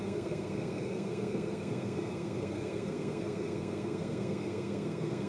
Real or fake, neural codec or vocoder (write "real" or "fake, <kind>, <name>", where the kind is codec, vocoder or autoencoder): fake, codec, SNAC